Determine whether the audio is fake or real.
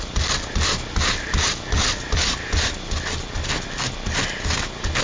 real